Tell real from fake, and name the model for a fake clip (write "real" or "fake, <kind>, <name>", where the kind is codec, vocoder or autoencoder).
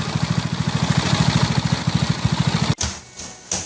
real